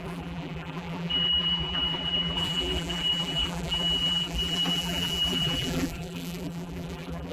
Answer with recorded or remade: remade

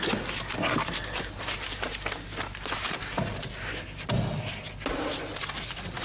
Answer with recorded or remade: recorded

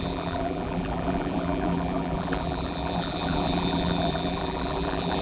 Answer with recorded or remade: remade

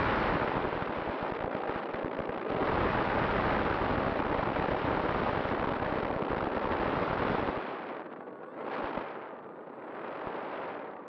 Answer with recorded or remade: recorded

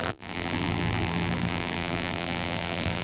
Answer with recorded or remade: remade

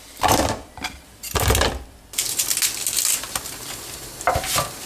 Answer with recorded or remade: remade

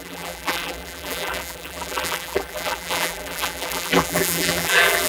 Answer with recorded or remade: remade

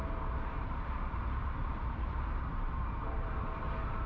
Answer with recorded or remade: remade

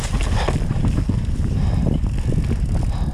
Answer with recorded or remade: recorded